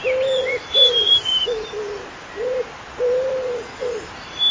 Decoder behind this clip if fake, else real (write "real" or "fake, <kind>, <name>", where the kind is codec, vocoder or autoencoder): real